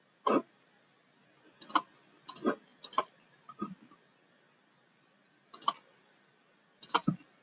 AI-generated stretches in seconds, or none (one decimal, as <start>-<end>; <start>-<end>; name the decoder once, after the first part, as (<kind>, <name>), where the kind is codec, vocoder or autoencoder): none

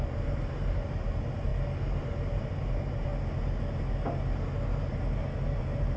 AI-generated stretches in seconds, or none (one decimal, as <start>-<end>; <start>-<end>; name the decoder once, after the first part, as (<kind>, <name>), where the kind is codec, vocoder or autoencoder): 0.0-1.5 (vocoder, BigVGAN v2); 2.0-3.1; 5.6-6.0

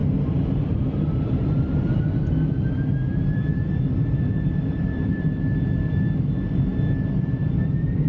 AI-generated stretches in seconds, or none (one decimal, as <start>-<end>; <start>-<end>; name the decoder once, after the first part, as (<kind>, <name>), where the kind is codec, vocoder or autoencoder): 0.0-1.4 (vocoder, BigVGAN v2); 3.1-5.4; 6.7-8.1

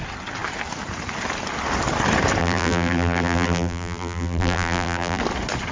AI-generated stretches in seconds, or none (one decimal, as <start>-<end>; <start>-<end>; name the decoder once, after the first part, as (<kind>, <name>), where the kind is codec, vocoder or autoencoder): 2.4-5.2 (vocoder, BigVGAN v2)